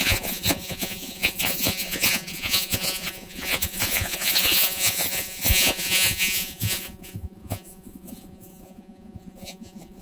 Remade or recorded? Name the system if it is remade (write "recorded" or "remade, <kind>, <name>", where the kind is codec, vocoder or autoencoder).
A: remade, vocoder, Vocos